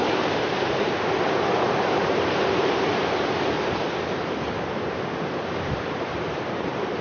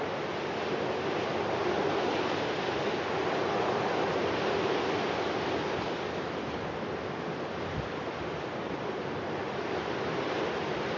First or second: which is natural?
second